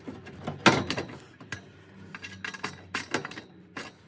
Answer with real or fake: real